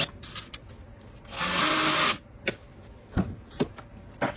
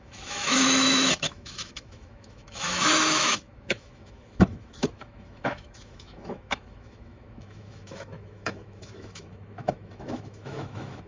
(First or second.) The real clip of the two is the first